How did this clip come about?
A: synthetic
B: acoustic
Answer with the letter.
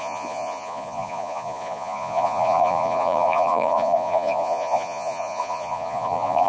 A